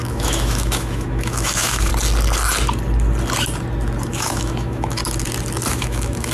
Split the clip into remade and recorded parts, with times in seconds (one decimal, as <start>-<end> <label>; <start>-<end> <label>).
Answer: 0.0-1.9 remade; 1.9-4.1 recorded; 4.1-5.0 remade; 5.0-5.7 recorded; 5.7-6.3 remade